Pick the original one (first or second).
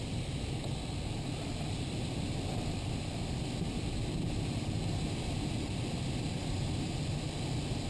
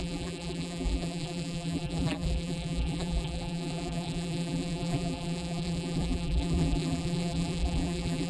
first